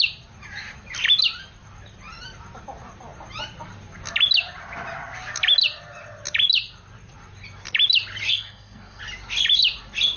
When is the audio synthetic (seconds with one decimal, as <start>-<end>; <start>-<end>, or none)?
8.3-9.0